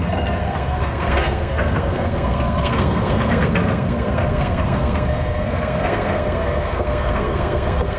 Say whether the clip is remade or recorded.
remade